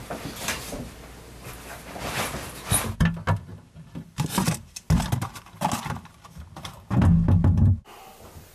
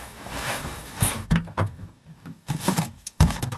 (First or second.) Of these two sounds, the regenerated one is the second